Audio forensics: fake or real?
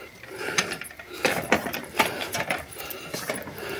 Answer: fake